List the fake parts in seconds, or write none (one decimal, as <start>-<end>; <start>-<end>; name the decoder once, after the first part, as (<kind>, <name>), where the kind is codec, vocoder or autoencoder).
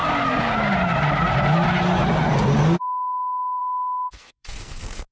3.6-5.1 (codec, SNAC)